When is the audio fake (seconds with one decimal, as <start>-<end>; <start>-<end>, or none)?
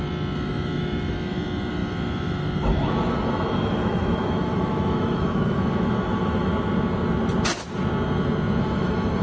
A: 0.0-6.5; 8.6-9.2